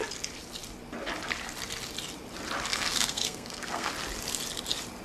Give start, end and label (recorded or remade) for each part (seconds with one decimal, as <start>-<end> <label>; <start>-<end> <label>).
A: 0.0-2.7 recorded; 2.7-3.9 remade; 3.9-5.0 recorded